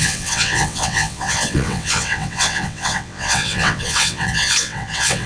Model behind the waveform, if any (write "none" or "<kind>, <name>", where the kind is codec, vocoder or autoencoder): vocoder, WaveNeXt